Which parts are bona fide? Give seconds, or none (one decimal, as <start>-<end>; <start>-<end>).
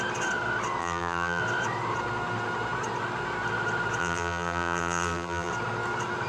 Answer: 0.0-0.8; 1.4-4.0; 5.5-6.3